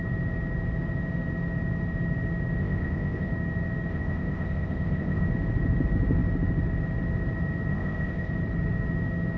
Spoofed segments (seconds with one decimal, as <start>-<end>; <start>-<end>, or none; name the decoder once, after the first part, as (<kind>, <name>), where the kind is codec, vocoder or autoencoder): 2.6-3.3 (codec, ZipCodec); 3.9-5.3; 7.7-8.3